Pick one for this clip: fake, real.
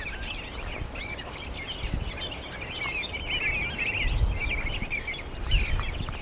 real